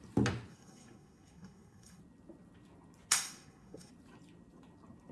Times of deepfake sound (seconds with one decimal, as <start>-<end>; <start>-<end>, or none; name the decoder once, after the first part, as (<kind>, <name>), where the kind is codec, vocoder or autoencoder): 0.5-2.0 (codec, SNAC); 3.1-3.9